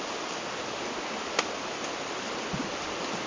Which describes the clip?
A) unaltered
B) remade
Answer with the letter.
A